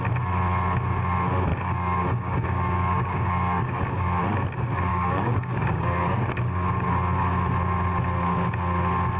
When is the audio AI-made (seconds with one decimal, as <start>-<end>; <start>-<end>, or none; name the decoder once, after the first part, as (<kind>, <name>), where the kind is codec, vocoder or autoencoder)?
1.5-4.2 (codec, DAC); 4.9-6.7